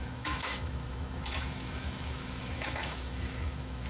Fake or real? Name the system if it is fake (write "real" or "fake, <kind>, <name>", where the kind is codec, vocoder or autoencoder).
fake, autoencoder, DAC-VAE